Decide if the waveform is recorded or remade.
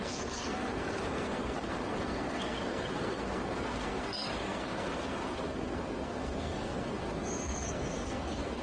remade